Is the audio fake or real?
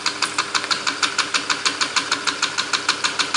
real